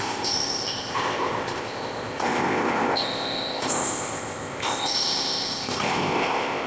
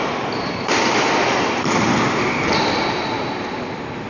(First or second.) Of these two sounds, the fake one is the first